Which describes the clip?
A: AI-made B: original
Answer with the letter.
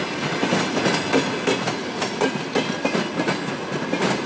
B